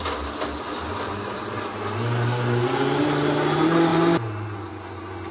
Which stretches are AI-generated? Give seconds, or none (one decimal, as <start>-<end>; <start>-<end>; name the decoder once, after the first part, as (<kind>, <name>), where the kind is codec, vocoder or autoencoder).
none